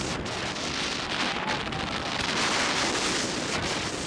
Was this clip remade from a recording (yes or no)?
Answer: no